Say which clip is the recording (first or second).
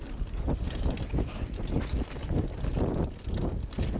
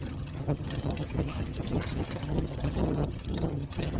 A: first